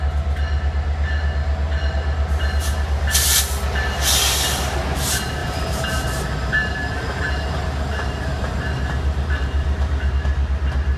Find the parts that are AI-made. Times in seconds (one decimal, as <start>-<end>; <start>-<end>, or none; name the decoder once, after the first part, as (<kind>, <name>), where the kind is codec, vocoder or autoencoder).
5.4-10.1 (vocoder, BigVGAN v2)